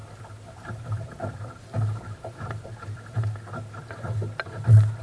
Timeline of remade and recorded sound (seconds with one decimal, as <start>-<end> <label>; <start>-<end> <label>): 0.0-3.0 remade; 3.0-5.0 recorded